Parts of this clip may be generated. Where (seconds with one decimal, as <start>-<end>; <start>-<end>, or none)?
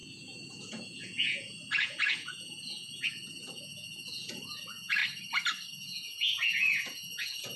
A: 0.0-5.0; 5.7-7.6